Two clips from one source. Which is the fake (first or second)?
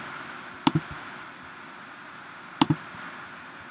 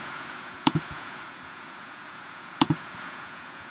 second